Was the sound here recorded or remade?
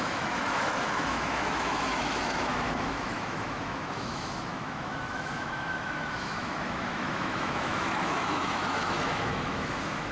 remade